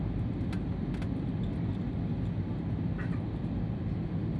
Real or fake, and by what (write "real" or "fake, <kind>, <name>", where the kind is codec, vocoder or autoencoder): real